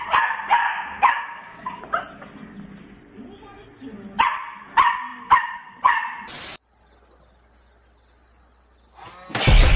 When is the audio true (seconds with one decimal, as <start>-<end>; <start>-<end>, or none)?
0.0-0.6; 1.8-9.8

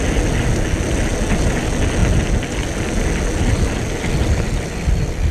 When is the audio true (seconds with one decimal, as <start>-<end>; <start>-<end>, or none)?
0.0-5.3

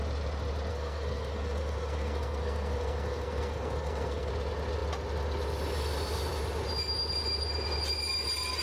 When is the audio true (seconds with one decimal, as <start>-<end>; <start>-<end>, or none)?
0.0-0.7; 4.3-8.6

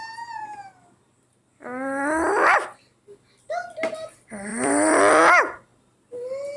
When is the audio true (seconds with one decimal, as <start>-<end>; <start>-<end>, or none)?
0.0-4.5; 5.2-6.6

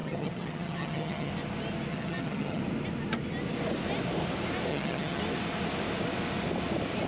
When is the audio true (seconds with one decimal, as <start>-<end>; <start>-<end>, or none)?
1.3-1.9; 2.6-4.7; 5.2-7.1